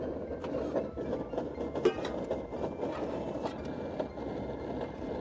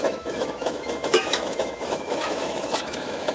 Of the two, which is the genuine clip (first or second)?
first